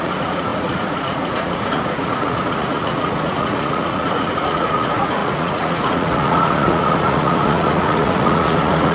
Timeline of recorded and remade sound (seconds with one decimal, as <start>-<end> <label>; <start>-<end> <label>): 0.0-8.9 remade